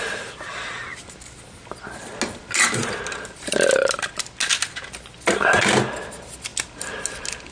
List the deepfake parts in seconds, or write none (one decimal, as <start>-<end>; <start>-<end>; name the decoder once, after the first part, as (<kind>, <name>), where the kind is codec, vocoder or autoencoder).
none